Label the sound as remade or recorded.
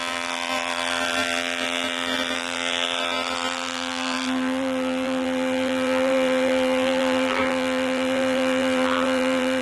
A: remade